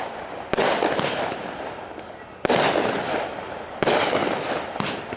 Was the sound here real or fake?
real